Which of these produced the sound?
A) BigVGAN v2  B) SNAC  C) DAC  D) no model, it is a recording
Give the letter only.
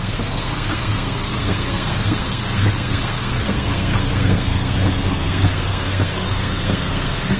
B